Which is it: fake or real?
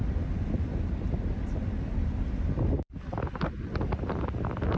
fake